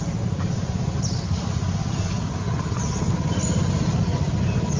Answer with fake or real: real